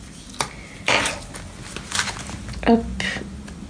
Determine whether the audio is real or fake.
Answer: real